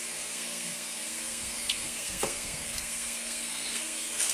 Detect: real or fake fake